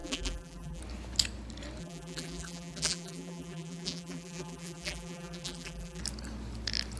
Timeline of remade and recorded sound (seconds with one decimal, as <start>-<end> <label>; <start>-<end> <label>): 0.0-0.8 remade; 0.8-1.8 recorded; 1.8-6.0 remade; 6.0-7.0 recorded